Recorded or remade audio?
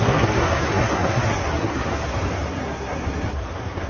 remade